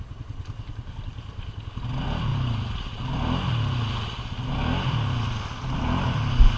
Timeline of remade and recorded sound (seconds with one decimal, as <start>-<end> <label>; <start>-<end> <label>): 0.0-6.6 recorded